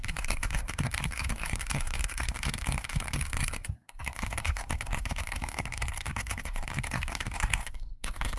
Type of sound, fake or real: fake